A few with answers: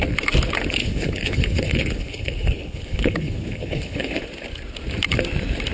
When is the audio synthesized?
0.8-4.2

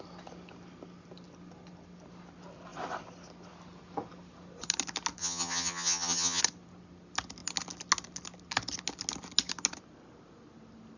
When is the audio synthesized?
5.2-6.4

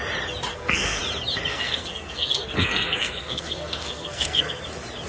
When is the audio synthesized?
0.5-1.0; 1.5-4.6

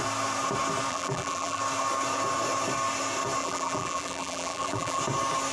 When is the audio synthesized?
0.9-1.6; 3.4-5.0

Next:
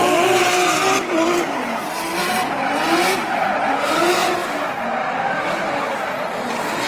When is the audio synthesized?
none

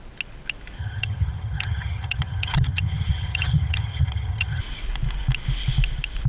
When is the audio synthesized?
0.8-4.6